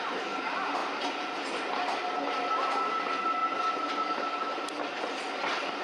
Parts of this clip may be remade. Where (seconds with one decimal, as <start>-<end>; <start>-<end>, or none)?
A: 3.4-4.7

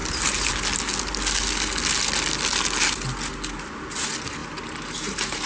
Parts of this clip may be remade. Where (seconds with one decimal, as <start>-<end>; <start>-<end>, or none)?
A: 0.0-0.5; 4.4-5.5

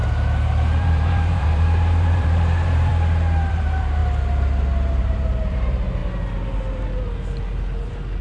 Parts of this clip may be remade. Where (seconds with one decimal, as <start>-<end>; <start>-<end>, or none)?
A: 0.8-2.9; 3.5-4.0; 5.0-6.0